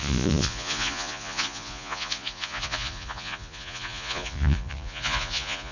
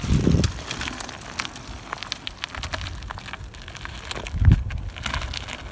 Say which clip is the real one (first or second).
second